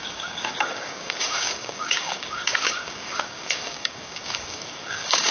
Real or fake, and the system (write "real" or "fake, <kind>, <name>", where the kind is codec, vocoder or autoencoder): fake, codec, DAC